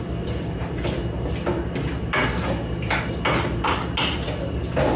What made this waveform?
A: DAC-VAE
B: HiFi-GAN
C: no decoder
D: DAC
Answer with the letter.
C